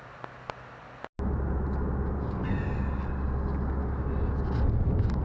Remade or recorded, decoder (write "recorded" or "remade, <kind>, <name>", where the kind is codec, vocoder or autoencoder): recorded